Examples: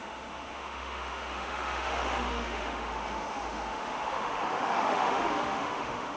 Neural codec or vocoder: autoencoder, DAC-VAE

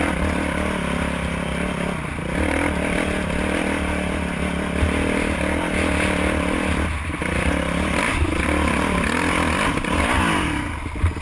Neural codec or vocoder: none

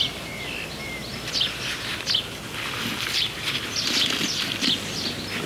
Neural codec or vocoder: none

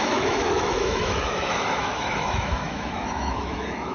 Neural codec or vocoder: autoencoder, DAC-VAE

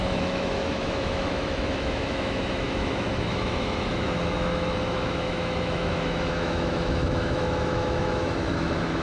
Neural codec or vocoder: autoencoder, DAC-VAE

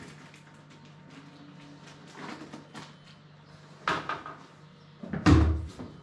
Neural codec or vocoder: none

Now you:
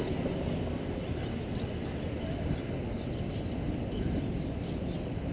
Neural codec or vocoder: none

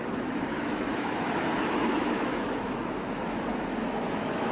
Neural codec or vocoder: autoencoder, DAC-VAE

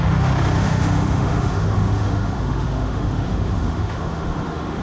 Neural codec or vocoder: autoencoder, DAC-VAE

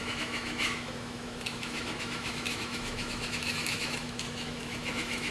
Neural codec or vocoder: autoencoder, DAC-VAE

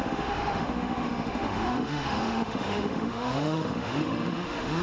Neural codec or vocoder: autoencoder, DAC-VAE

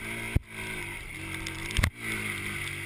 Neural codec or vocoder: none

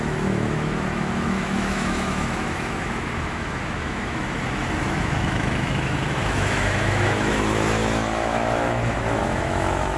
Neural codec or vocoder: autoencoder, DAC-VAE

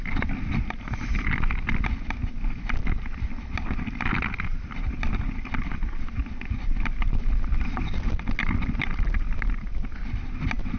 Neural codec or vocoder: none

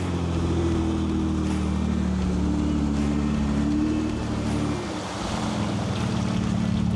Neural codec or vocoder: none